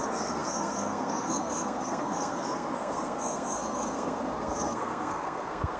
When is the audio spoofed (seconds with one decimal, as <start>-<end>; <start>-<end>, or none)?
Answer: 0.0-5.8